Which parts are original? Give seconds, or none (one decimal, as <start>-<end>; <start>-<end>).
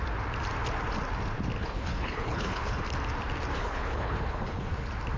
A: 0.0-1.6; 2.8-3.5; 4.7-5.2